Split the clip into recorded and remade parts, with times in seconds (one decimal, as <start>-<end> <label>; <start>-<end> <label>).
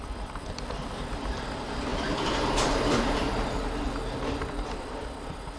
0.0-5.6 recorded